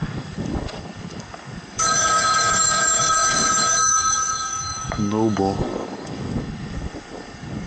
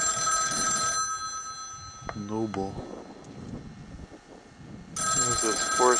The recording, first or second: second